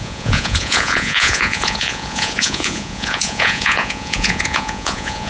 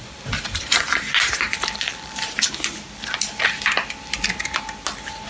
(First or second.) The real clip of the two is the second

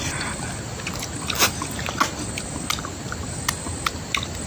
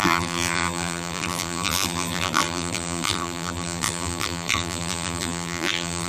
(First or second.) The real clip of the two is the first